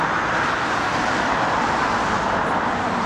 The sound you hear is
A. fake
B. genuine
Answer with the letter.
B